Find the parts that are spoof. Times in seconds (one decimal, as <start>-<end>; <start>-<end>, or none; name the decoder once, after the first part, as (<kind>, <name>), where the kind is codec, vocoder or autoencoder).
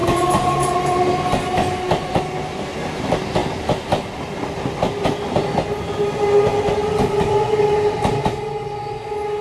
none